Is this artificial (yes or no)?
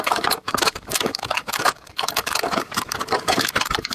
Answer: yes